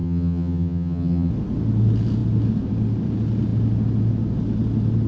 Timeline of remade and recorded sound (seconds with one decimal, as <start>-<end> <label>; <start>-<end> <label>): 0.0-1.3 remade; 1.3-5.1 recorded